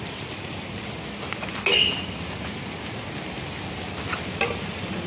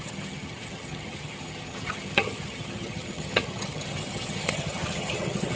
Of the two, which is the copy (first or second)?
second